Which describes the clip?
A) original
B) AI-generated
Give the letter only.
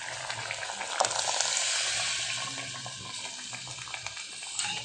A